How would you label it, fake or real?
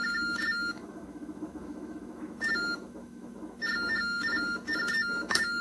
fake